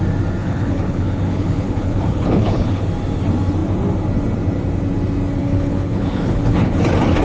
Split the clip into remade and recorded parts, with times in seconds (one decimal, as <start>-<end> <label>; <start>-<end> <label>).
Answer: 0.0-0.4 recorded; 0.4-2.8 remade; 2.8-5.4 recorded; 5.4-6.7 remade; 6.7-7.2 recorded